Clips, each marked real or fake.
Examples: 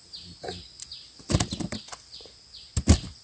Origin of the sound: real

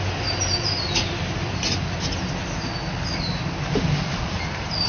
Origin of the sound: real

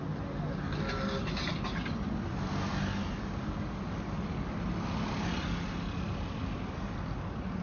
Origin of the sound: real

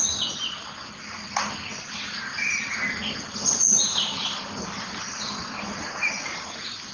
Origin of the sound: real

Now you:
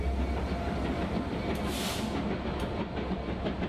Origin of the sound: real